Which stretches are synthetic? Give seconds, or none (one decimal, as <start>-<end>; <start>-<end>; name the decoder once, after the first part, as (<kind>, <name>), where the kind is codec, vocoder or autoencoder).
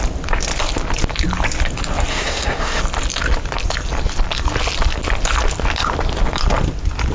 2.1-2.8 (codec, SNAC)